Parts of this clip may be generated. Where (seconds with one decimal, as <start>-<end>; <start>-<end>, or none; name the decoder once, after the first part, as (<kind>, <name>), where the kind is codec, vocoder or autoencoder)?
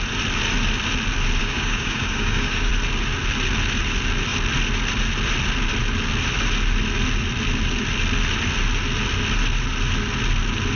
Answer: 1.4-2.7 (codec, DAC)